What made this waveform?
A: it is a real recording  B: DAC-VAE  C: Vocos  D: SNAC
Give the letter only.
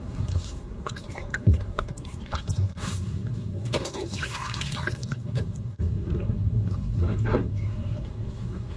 D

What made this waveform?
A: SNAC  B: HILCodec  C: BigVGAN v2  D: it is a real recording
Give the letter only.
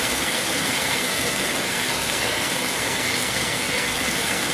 A